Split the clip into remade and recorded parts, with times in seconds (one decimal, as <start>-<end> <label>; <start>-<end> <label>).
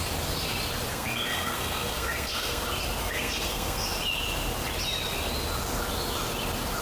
0.0-0.9 recorded; 0.9-2.6 remade; 2.6-3.0 recorded; 3.0-3.9 remade; 3.9-6.8 recorded